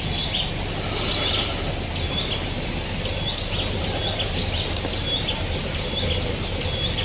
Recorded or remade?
recorded